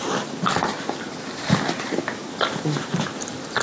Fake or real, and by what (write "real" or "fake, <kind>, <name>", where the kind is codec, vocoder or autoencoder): real